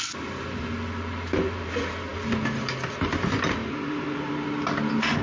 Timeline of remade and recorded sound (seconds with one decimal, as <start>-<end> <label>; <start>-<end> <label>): 0.0-3.6 recorded; 3.6-4.3 remade; 4.3-5.2 recorded